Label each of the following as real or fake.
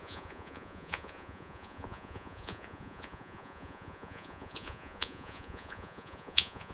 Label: fake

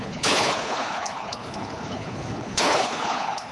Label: fake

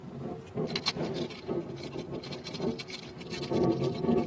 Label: real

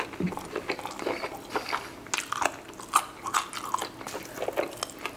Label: real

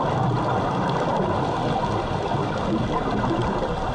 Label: real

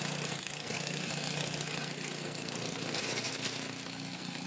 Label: fake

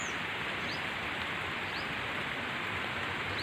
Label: real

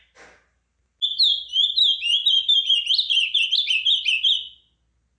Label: real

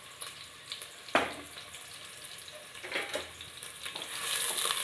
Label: real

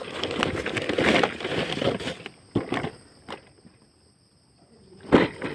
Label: real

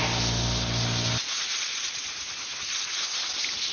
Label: real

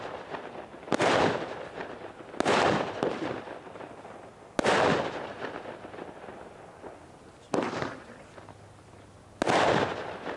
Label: real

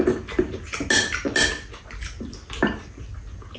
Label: real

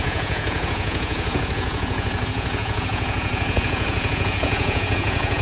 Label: fake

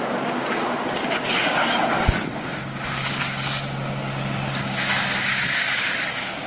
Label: fake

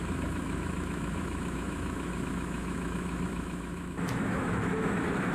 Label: fake